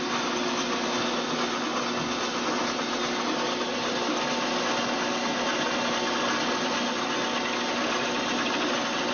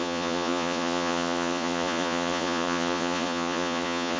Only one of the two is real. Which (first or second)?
first